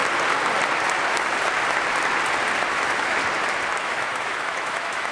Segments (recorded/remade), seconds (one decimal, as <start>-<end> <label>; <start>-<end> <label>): 0.0-2.7 recorded; 2.7-3.2 remade; 3.2-3.8 recorded; 3.8-5.1 remade